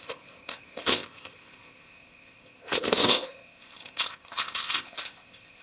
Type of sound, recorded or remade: remade